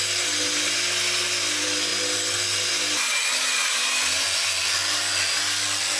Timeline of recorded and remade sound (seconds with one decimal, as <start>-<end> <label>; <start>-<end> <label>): 0.0-6.0 recorded